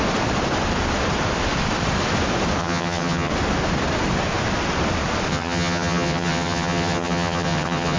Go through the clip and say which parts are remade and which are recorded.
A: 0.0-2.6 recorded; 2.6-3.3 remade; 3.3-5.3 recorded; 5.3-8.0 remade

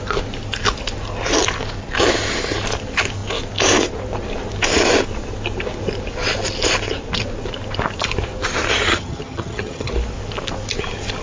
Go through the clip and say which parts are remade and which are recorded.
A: 0.0-8.9 recorded; 8.9-9.9 remade; 9.9-11.2 recorded

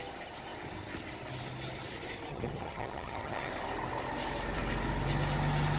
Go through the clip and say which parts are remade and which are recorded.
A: 0.0-2.3 recorded; 2.3-3.5 remade; 3.5-5.8 recorded

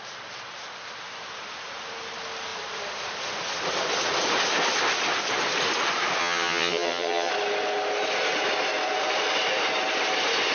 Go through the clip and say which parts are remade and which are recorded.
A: 0.0-6.2 recorded; 6.2-7.3 remade; 7.3-10.5 recorded

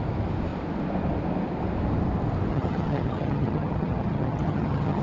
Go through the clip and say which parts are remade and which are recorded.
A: 0.0-2.5 recorded; 2.5-5.0 remade

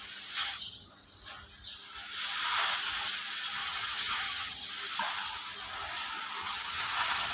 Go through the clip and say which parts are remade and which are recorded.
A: 0.0-0.4 recorded; 0.4-0.9 remade; 0.9-3.6 recorded; 3.6-4.7 remade; 4.7-6.4 recorded; 6.4-7.3 remade

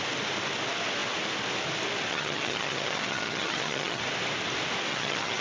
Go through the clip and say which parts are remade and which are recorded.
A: 0.0-2.1 recorded; 2.1-4.0 remade; 4.0-4.9 recorded; 4.9-5.4 remade

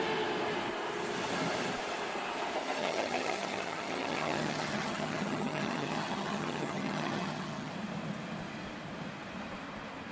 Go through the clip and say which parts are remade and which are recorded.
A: 0.0-2.8 recorded; 2.8-7.7 remade; 7.7-10.1 recorded